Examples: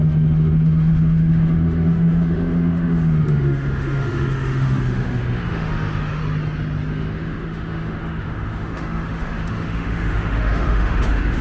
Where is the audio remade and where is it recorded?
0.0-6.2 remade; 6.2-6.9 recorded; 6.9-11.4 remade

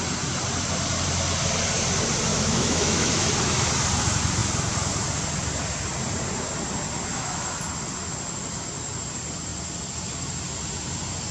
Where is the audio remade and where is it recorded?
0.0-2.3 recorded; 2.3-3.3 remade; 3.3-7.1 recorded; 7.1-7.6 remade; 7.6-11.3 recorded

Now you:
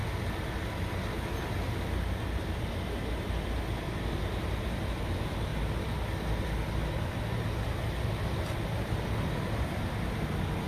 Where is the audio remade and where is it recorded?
0.0-10.7 recorded